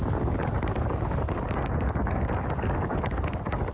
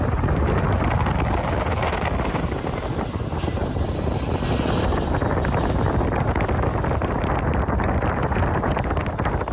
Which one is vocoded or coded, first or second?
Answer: first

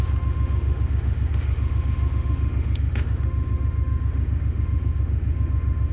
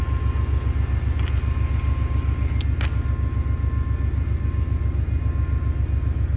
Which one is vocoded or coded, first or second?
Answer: first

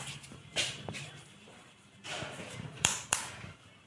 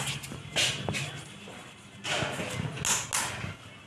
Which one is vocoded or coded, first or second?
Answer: first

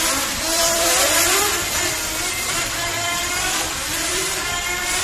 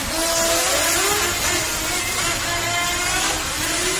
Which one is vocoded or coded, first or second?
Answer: first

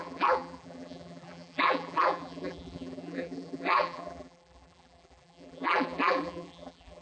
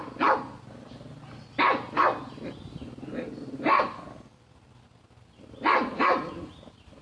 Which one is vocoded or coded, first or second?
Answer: first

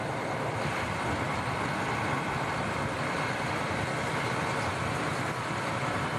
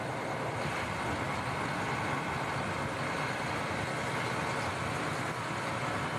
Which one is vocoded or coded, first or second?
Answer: first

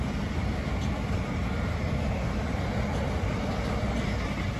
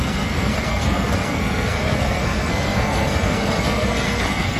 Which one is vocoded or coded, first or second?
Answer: second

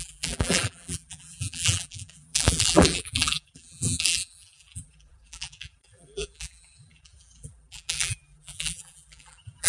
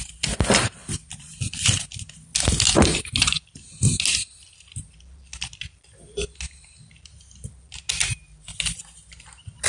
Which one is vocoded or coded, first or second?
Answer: first